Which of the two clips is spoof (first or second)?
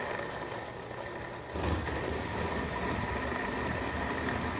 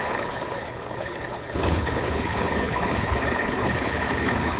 second